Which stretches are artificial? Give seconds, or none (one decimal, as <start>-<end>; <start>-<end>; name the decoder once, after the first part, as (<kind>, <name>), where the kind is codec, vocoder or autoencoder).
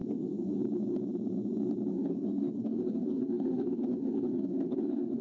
0.0-0.6 (autoencoder, DAC-VAE); 1.9-5.2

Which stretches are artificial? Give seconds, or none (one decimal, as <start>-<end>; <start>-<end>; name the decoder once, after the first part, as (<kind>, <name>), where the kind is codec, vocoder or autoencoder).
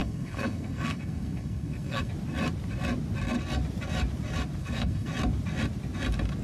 0.0-2.1 (codec, SNAC); 4.6-5.1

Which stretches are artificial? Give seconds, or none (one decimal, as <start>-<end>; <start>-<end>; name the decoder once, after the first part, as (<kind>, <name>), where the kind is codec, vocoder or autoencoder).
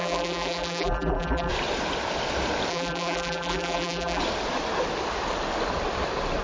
0.0-1.5 (vocoder, BigVGAN v2); 2.7-4.2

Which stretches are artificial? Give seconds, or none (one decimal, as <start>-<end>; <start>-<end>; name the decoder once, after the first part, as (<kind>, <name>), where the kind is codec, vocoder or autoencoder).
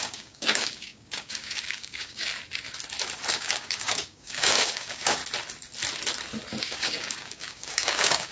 0.0-2.3 (codec, DAC); 3.3-5.2; 6.6-8.3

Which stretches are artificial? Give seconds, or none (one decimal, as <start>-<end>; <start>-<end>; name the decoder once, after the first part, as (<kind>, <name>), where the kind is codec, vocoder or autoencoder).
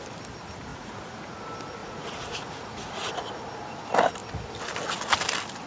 0.7-1.4 (vocoder, Vocos); 1.8-3.1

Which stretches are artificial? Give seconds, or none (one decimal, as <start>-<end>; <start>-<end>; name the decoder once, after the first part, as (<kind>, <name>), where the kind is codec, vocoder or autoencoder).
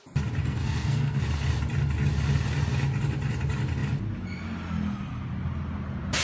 0.4-1.2 (codec, SNAC)